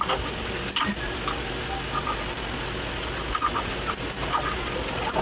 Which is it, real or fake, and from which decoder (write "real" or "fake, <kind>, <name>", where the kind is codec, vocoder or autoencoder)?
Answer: real